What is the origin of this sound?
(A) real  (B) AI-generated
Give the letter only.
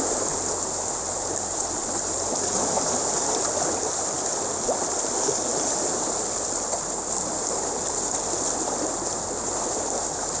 A